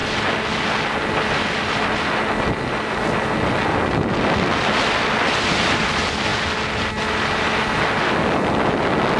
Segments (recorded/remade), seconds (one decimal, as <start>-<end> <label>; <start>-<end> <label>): 0.0-9.2 recorded